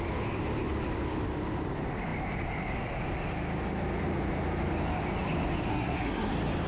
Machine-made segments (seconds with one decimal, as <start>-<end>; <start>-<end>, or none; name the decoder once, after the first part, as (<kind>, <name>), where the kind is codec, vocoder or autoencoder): 5.7-6.3 (codec, SNAC)

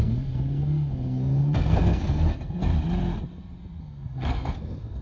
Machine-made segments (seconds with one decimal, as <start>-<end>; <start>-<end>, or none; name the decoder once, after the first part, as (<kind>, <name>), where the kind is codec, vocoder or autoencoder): 0.0-2.7 (codec, SNAC); 3.8-5.0

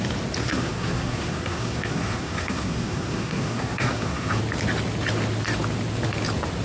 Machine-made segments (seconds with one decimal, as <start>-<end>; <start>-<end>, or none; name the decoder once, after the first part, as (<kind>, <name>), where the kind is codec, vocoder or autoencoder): 0.4-4.4 (codec, SNAC)

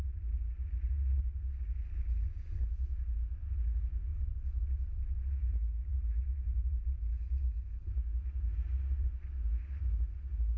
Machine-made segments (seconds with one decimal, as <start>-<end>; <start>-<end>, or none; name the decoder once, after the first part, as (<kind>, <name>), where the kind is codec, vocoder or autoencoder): none

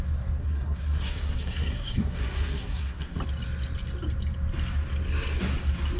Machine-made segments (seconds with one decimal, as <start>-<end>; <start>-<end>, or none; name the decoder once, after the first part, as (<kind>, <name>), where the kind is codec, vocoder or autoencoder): 0.4-3.2 (codec, SNAC)

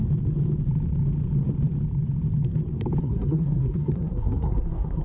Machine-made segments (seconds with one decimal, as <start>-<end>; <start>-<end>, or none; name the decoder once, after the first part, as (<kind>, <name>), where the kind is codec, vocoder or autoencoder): 3.0-5.0 (codec, SNAC)